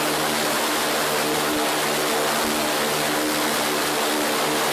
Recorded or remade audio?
recorded